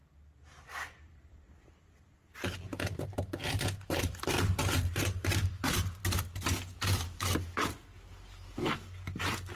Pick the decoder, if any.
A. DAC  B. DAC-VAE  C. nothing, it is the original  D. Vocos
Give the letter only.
C